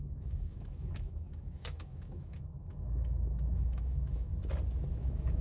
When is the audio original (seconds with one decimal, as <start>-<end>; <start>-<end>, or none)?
4.3-4.9